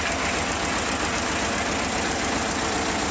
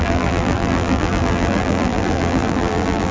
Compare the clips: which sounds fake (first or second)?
second